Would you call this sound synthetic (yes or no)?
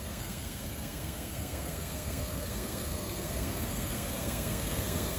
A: yes